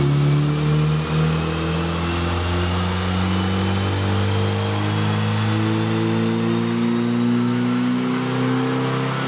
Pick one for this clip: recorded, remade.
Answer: recorded